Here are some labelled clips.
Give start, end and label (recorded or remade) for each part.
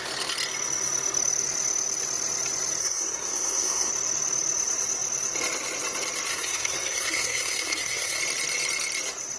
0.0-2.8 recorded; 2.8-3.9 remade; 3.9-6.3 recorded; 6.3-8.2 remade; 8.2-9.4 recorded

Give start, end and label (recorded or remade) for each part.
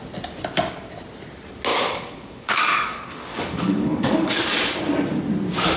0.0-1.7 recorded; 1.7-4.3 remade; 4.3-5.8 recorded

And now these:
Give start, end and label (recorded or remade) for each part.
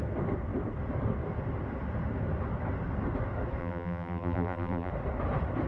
0.0-3.6 recorded; 3.6-4.9 remade; 4.9-5.7 recorded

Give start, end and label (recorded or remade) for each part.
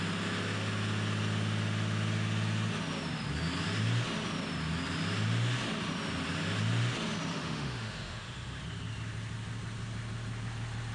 0.0-7.3 recorded; 7.3-8.6 remade; 8.6-10.9 recorded